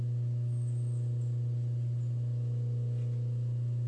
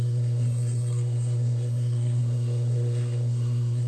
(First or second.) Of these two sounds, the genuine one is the first